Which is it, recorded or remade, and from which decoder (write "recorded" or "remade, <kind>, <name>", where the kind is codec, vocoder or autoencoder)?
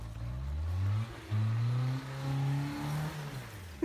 recorded